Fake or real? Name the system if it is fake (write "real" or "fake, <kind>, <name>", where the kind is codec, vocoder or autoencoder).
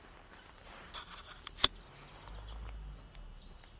real